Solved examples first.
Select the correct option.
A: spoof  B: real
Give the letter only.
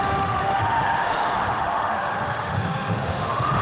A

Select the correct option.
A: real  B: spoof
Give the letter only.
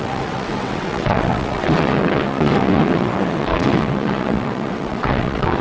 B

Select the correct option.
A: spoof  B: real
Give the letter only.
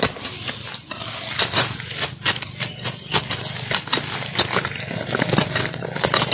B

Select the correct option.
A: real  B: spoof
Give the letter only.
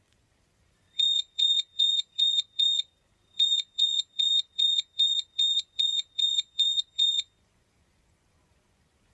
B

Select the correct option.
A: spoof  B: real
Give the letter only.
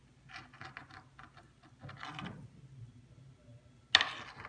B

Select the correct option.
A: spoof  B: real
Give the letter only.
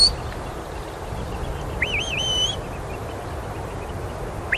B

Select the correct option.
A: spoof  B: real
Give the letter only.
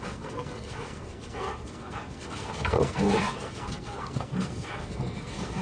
A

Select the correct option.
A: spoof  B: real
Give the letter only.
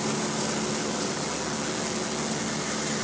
B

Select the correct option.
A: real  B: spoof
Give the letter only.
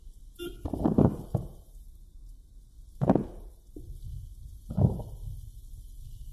A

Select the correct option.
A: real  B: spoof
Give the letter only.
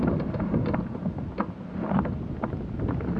A